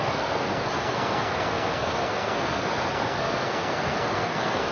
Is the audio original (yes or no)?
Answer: no